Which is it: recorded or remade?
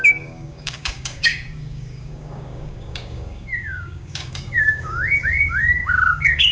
remade